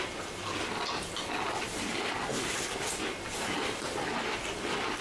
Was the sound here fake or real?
real